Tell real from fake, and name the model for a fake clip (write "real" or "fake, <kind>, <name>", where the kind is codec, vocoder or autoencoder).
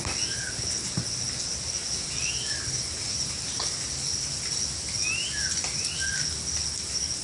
real